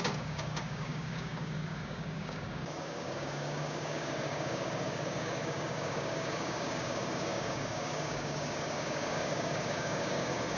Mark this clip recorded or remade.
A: remade